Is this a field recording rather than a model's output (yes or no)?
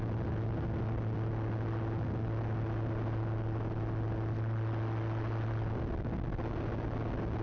yes